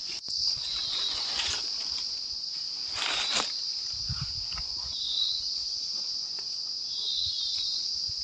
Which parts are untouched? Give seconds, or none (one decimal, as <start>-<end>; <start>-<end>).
2.8-4.6